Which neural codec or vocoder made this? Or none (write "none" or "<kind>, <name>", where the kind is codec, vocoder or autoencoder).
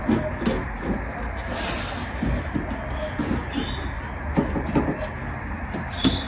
none